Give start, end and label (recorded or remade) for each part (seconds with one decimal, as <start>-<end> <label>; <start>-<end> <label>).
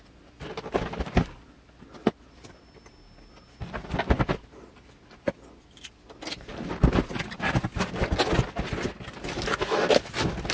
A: 0.0-10.5 recorded